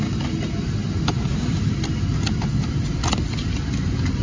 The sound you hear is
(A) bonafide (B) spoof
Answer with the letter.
A